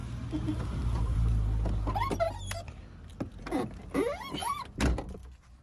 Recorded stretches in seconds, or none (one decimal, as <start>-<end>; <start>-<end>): 0.0-5.6